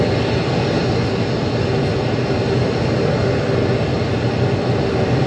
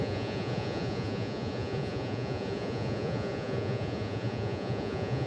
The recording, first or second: first